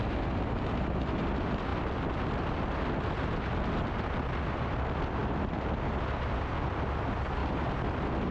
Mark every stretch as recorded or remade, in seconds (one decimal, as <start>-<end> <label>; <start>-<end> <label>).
0.0-8.3 recorded